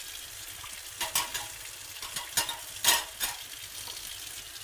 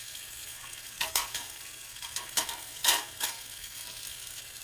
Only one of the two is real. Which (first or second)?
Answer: first